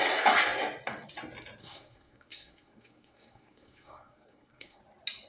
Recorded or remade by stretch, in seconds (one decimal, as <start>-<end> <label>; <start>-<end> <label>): 0.0-1.6 recorded; 1.6-4.8 remade; 4.8-5.3 recorded